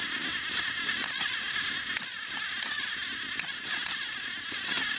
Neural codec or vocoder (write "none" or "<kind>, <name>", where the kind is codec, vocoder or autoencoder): none